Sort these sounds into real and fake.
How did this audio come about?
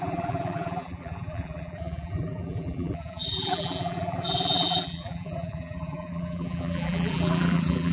fake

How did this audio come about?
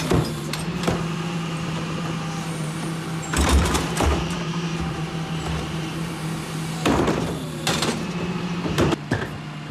fake